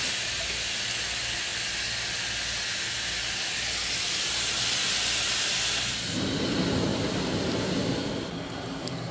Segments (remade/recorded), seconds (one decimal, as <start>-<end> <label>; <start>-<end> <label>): 0.0-9.1 recorded